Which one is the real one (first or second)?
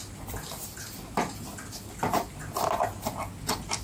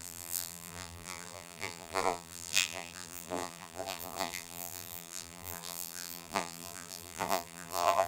first